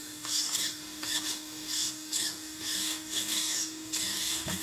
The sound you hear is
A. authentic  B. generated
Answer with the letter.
B